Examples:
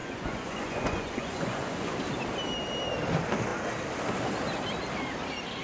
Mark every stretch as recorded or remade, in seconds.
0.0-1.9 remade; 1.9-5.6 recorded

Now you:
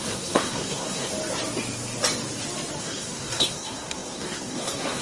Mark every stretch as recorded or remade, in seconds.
0.0-1.1 remade; 1.1-2.8 recorded; 2.8-5.0 remade